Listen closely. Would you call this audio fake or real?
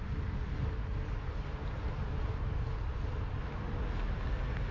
real